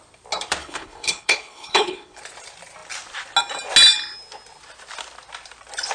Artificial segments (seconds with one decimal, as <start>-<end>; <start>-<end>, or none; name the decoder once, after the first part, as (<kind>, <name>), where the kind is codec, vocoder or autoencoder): 0.6-2.2 (codec, HILCodec)

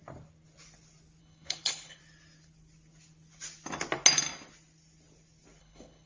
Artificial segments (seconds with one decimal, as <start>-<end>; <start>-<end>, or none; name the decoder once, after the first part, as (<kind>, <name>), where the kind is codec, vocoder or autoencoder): 1.2-2.0 (codec, HILCodec); 5.6-6.1

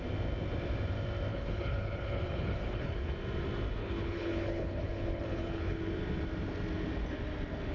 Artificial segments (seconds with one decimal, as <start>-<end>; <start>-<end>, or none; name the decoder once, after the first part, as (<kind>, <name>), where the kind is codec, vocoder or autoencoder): 1.3-3.1 (codec, HILCodec); 3.8-5.8

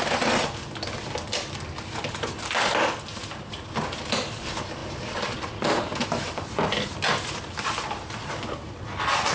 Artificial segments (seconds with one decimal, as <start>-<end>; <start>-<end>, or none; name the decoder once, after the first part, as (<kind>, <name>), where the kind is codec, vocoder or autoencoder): none

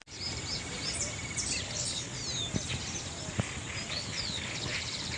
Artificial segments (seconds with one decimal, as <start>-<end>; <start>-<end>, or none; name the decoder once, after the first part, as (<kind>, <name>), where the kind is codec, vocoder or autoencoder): 1.6-2.2 (codec, HILCodec); 3.9-5.2

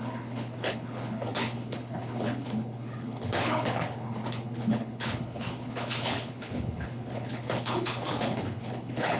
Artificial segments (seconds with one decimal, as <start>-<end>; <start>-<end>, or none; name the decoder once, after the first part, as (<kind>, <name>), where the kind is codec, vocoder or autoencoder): 0.0-9.2 (codec, HILCodec)

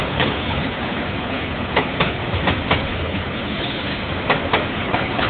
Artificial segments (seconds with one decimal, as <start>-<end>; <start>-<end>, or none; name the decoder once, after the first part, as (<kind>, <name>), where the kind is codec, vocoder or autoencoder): 0.0-2.2 (codec, HILCodec); 2.8-3.9; 4.7-5.3